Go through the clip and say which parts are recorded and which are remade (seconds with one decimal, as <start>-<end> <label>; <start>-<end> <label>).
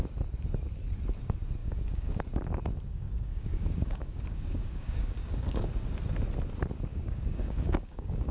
0.0-1.6 recorded; 1.6-2.2 remade; 2.2-2.9 recorded; 2.9-5.7 remade; 5.7-6.9 recorded; 6.9-8.3 remade